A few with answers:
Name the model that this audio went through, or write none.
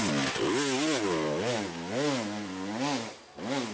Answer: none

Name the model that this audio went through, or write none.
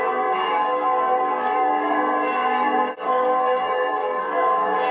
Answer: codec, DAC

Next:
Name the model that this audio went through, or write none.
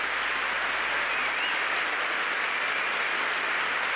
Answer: none